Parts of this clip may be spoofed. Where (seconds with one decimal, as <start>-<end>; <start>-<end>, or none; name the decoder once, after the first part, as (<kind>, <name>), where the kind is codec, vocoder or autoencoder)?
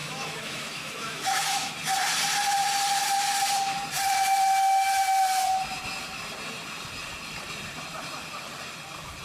0.0-1.7 (autoencoder, DAC-VAE)